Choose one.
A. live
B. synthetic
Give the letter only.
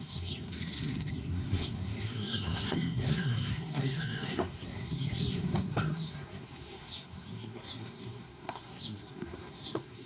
B